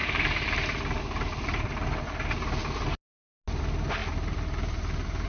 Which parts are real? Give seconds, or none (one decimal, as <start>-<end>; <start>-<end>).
1.0-4.0